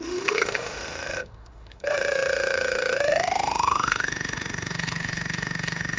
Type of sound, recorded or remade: remade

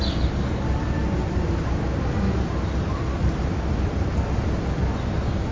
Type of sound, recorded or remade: recorded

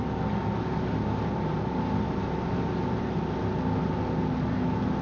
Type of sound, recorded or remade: recorded